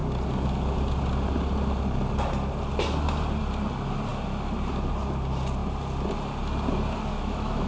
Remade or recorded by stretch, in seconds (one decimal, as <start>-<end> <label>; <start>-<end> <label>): 0.0-7.1 recorded; 7.1-7.7 remade